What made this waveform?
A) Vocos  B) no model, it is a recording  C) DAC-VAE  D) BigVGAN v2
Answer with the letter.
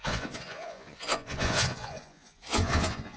A